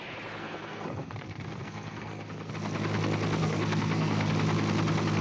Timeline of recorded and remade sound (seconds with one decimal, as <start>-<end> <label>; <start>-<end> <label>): 0.0-0.4 recorded; 0.4-2.5 remade; 2.5-3.4 recorded; 3.4-4.3 remade; 4.3-5.2 recorded